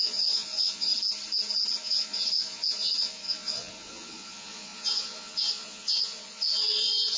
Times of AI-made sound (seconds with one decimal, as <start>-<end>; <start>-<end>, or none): 0.0-0.9; 1.8-7.2